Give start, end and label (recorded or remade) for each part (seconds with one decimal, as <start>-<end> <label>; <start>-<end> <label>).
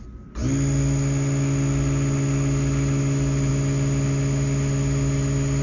0.0-5.6 recorded